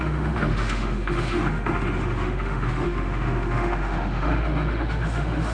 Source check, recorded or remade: remade